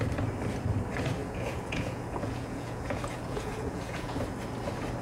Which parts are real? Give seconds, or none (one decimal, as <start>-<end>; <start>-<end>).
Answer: 0.0-1.2; 4.2-5.0